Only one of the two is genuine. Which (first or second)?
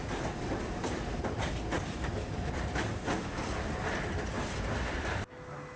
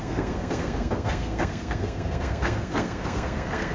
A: first